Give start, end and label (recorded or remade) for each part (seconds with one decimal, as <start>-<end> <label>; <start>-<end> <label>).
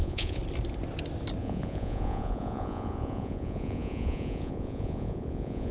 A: 0.0-0.4 remade; 0.4-1.4 recorded; 1.4-5.7 remade